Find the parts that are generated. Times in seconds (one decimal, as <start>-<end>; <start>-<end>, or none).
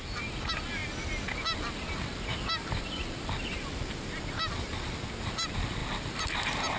none